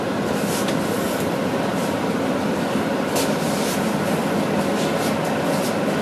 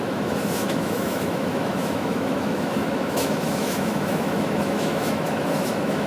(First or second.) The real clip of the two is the first